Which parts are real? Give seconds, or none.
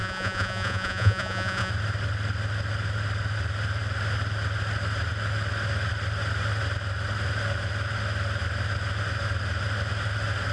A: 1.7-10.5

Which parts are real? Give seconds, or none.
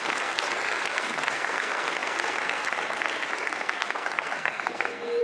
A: none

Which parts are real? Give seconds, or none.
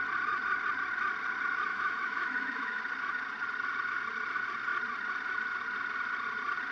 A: 0.0-1.7; 2.8-6.7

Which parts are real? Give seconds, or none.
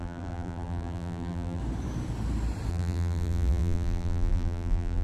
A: 1.6-2.7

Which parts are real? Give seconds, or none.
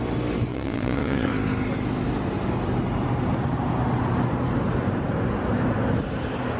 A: 0.0-0.5; 1.3-6.6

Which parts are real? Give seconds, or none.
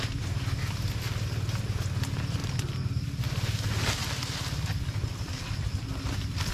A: 0.0-6.5